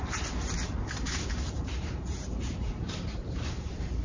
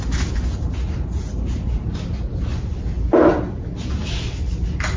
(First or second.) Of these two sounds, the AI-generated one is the first